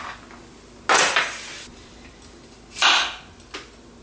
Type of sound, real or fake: real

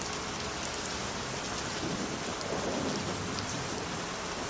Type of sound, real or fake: real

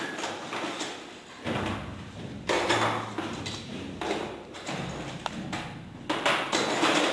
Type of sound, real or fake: real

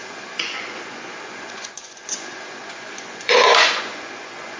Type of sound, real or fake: fake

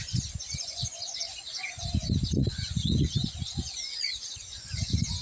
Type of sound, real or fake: fake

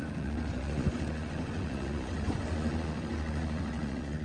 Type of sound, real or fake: fake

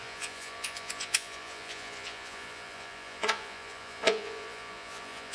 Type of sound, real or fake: fake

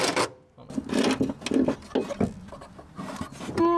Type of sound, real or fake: real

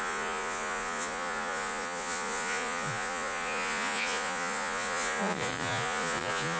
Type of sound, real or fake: fake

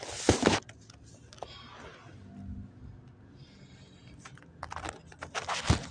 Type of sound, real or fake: real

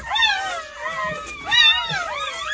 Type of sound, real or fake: real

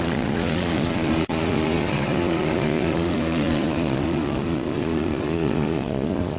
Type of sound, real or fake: fake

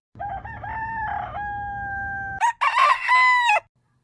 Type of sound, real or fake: real